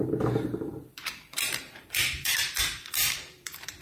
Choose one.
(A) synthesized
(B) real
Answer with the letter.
A